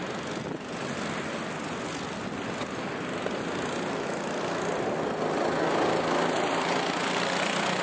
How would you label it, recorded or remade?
recorded